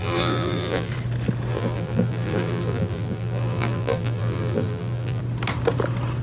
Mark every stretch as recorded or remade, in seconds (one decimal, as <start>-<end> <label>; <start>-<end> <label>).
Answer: 0.0-0.9 remade; 0.9-1.5 recorded; 1.5-5.2 remade; 5.2-6.2 recorded